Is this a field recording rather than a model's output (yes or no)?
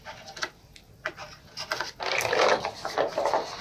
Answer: yes